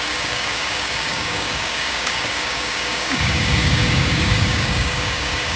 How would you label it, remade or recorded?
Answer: remade